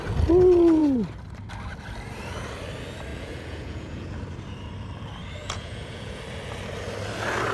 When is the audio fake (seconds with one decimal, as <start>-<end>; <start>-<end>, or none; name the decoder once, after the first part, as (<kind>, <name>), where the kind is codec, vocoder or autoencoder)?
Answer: 3.1-4.1 (vocoder, Vocos); 5.4-6.2